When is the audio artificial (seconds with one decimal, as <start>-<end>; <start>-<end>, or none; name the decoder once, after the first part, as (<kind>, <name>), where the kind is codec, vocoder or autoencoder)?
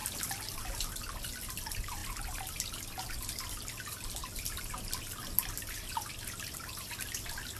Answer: none